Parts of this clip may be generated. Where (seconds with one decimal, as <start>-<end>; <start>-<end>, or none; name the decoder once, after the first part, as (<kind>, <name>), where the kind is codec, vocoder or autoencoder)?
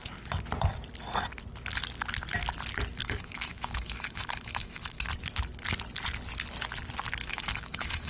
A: 3.0-5.1 (autoencoder, DAC-VAE); 7.2-8.1